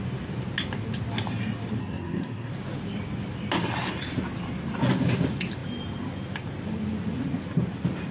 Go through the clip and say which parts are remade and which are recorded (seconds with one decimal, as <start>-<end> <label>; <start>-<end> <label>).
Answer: 0.0-1.8 recorded; 1.8-2.5 remade; 2.5-8.1 recorded